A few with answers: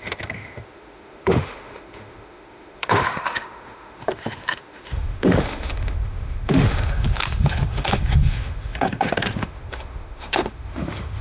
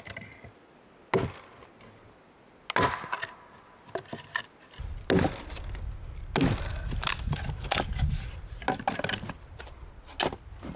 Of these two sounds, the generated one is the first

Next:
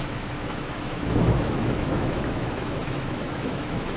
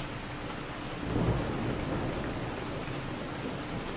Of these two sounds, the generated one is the first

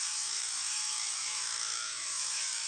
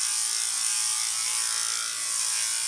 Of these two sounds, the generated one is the first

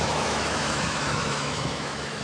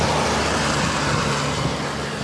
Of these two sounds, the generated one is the first